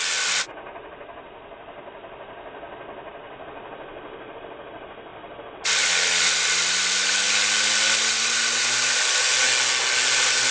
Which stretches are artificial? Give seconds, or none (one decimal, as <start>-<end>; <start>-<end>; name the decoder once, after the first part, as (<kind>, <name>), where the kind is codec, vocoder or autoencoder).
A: none